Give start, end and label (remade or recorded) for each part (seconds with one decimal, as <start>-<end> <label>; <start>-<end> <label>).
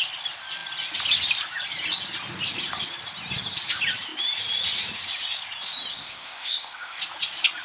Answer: 0.0-5.9 recorded; 5.9-7.0 remade; 7.0-7.6 recorded